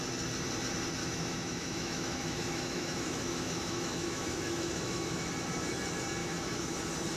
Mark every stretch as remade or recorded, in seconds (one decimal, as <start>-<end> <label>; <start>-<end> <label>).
0.0-1.0 recorded; 1.0-5.3 remade; 5.3-6.2 recorded; 6.2-6.8 remade; 6.8-7.2 recorded